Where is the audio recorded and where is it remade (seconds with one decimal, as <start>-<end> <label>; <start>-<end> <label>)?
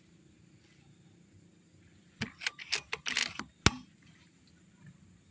0.0-5.3 recorded